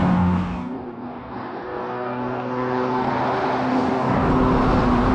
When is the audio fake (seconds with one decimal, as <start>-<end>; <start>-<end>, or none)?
0.0-3.1; 3.7-4.3